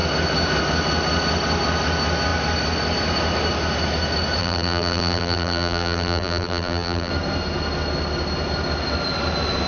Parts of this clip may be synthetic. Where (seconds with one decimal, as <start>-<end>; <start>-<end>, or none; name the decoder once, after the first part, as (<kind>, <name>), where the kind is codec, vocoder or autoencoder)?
4.4-7.1 (vocoder, BigVGAN v2)